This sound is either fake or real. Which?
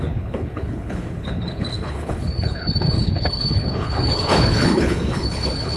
fake